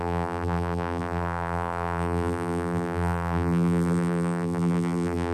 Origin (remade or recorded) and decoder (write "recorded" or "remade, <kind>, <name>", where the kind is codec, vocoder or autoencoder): remade, vocoder, BigVGAN v2